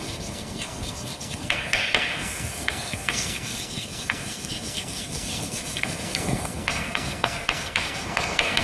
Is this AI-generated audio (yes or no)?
yes